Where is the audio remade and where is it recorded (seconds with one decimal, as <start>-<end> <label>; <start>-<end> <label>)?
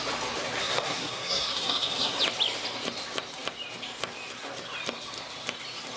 0.0-0.6 recorded; 0.6-2.2 remade; 2.2-6.0 recorded